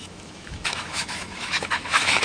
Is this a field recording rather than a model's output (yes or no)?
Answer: no